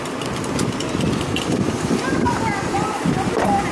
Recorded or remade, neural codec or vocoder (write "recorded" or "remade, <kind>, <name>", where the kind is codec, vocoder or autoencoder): recorded